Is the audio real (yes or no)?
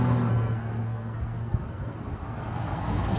no